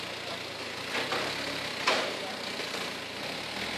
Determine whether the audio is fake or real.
real